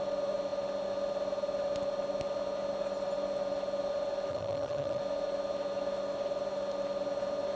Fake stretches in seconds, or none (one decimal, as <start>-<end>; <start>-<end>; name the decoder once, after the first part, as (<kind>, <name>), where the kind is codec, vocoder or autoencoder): 4.3-5.0 (vocoder, HiFi-GAN)